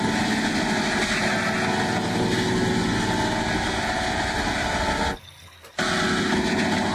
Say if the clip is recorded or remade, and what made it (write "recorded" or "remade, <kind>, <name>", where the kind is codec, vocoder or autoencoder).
recorded